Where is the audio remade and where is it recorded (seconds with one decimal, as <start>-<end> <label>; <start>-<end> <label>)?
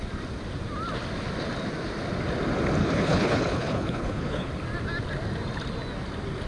0.0-2.8 recorded; 2.8-4.5 remade; 4.5-6.5 recorded